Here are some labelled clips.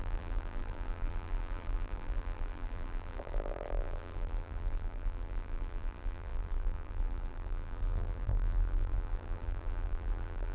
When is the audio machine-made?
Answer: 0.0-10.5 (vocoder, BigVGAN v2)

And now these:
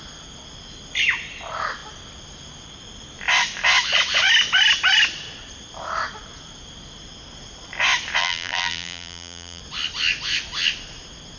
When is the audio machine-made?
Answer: 8.2-9.6 (vocoder, BigVGAN v2)

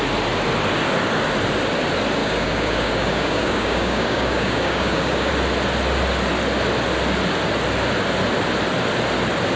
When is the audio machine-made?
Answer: 2.2-5.3 (codec, DAC)

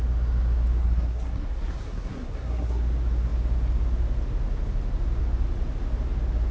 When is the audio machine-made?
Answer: 0.8-2.8 (codec, SNAC)